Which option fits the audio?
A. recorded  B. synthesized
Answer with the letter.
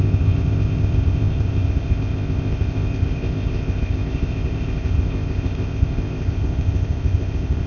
B